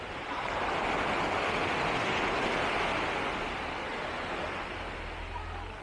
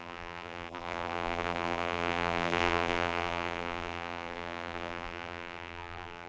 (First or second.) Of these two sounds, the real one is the first